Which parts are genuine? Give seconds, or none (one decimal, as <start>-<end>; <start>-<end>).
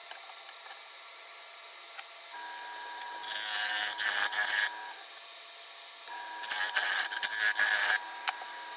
0.0-8.8